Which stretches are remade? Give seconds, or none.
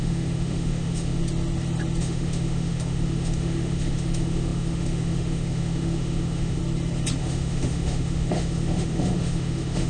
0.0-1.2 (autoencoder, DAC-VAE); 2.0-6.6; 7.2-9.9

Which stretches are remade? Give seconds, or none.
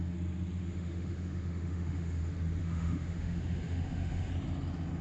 0.6-2.2 (autoencoder, DAC-VAE); 2.6-4.3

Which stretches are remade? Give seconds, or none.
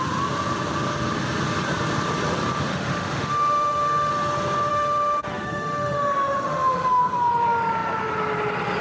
2.7-4.1 (autoencoder, DAC-VAE); 4.7-7.0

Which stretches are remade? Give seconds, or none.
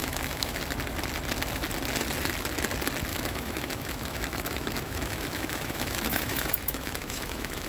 0.0-0.6 (autoencoder, DAC-VAE); 3.1-7.7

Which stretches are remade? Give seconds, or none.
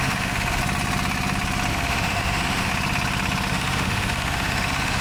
0.0-0.6 (autoencoder, DAC-VAE); 1.7-2.7; 3.5-5.0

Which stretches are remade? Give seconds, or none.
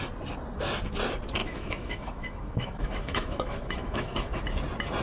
1.4-4.4 (autoencoder, DAC-VAE)